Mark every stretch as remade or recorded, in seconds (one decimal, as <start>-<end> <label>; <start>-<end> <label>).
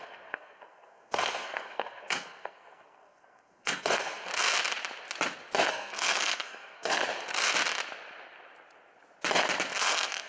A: 0.0-4.3 remade; 4.3-5.7 recorded; 5.7-7.0 remade; 7.0-9.8 recorded; 9.8-10.3 remade